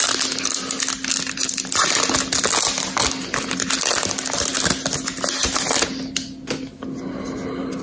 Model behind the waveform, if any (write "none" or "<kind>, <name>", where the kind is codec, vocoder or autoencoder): none